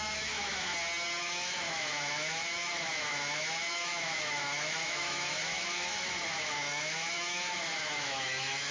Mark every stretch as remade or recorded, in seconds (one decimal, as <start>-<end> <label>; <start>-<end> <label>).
0.0-0.7 remade; 0.7-1.2 recorded; 1.2-8.7 remade